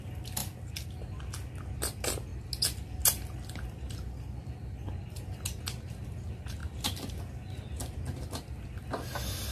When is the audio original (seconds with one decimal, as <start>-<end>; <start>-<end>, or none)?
0.0-9.5